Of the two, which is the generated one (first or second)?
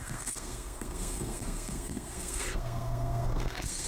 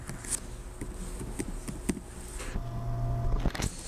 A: first